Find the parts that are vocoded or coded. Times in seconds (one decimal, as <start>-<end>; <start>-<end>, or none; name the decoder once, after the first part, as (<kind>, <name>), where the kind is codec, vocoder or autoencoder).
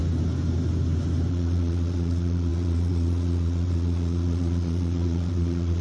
1.3-5.8 (vocoder, Vocos)